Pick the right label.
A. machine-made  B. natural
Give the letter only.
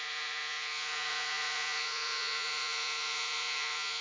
A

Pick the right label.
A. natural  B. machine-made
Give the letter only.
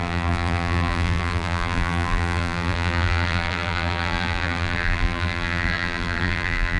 B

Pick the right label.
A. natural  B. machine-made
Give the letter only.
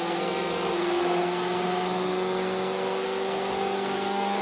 B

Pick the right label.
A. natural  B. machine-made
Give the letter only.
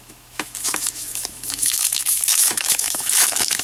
B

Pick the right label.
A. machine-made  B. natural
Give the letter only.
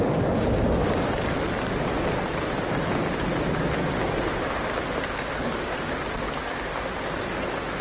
B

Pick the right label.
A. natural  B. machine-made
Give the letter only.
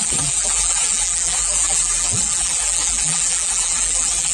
B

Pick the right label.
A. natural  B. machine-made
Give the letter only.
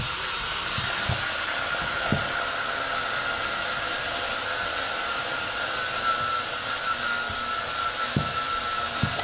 A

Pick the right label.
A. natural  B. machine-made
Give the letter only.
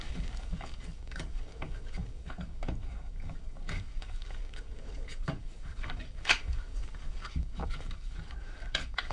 B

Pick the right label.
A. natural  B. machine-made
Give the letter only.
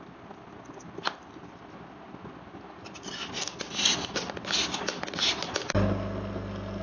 A